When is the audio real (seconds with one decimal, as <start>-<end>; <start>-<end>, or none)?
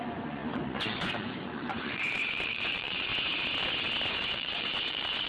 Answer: 3.1-4.1